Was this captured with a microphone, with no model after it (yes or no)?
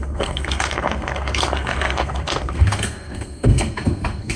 no